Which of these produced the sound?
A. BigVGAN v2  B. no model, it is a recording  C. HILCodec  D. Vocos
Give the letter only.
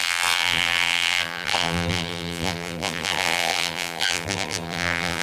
A